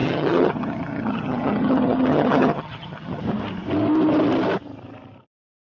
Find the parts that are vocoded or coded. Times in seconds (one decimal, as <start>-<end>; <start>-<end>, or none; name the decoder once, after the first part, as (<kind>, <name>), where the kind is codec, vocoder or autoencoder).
0.0-3.2 (vocoder, HiFi-GAN)